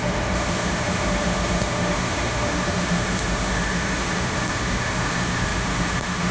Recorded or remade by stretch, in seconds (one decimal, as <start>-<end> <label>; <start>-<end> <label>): 0.0-6.3 remade